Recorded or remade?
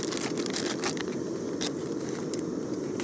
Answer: recorded